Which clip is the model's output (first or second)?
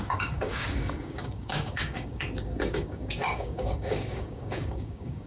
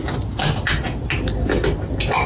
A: first